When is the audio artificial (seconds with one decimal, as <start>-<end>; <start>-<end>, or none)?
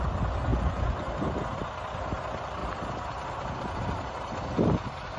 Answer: 0.5-1.1